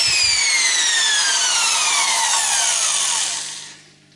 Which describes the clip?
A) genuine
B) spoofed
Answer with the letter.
A